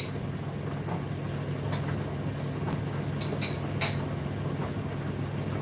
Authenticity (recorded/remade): recorded